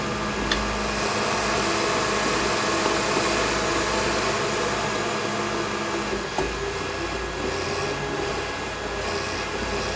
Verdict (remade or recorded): recorded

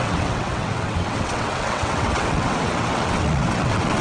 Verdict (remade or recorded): remade